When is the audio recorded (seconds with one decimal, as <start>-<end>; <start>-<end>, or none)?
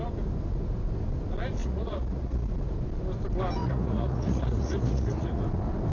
0.0-1.6; 2.5-3.6; 5.4-5.9